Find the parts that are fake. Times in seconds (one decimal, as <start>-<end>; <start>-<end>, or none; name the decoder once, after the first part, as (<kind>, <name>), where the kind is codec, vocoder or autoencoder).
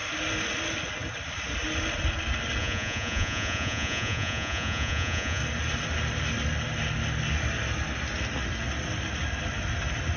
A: 2.6-5.4 (vocoder, Vocos)